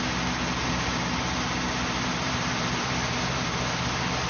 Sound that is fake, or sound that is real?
fake